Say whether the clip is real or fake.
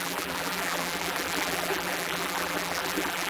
fake